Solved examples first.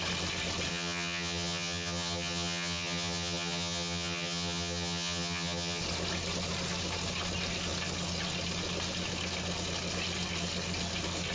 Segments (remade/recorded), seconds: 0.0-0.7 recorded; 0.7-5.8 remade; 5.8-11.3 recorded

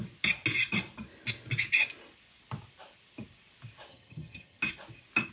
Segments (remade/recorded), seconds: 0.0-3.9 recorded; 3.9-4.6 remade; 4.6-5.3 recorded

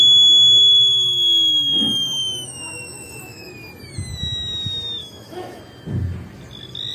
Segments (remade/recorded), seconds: 0.0-0.6 recorded; 0.6-3.5 remade; 3.5-5.0 recorded; 5.0-5.6 remade; 5.6-6.9 recorded